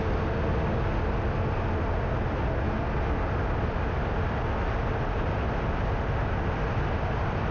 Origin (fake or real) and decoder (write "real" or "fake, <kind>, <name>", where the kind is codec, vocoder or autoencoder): real